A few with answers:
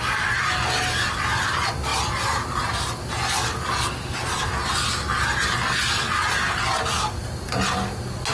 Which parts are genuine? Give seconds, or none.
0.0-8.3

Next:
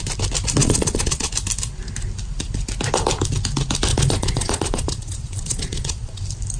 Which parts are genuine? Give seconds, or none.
0.0-0.6; 1.3-3.9; 6.1-6.6

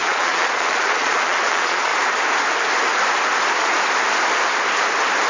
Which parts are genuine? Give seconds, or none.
1.9-5.3

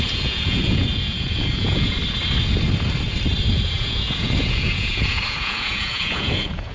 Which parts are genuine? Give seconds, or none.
2.0-3.5

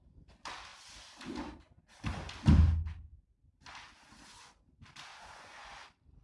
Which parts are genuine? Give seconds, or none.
0.0-5.1; 5.7-6.2